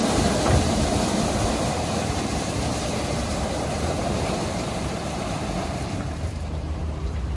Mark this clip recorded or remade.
remade